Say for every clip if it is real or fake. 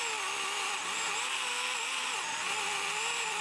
real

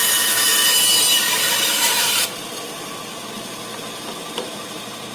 real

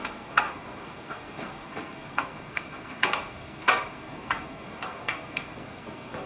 fake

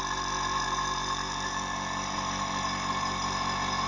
fake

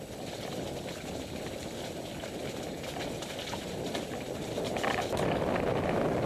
real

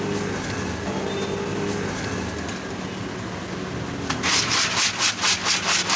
real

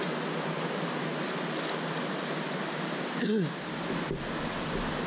real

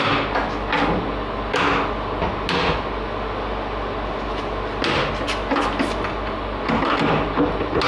real